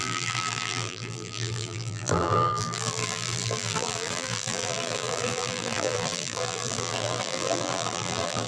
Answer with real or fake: fake